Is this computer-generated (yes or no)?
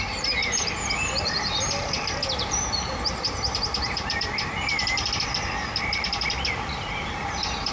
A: yes